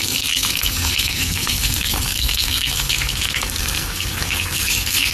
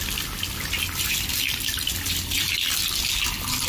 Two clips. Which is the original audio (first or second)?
second